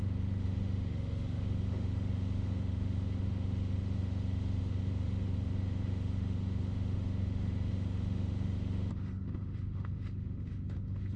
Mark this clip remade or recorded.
remade